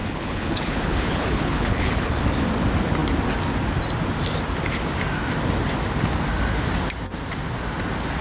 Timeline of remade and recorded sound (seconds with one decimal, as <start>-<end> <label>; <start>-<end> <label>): 0.0-2.2 remade; 2.2-8.2 recorded